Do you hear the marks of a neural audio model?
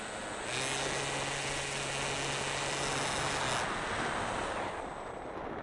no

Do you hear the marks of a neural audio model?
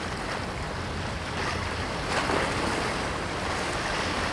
no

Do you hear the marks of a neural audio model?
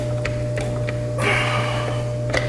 no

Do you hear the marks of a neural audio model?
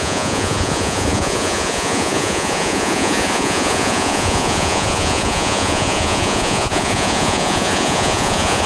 yes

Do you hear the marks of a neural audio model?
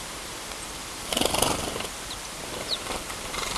yes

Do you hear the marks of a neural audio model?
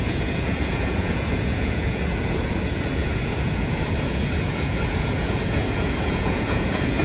yes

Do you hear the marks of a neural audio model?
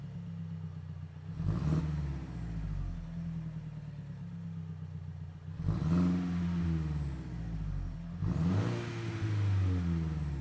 no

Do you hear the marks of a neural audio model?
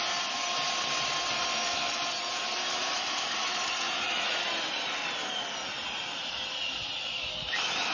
no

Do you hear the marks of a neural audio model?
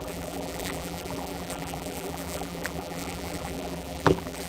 yes